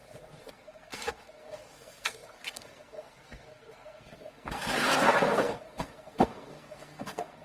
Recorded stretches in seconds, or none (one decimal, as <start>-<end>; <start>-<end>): none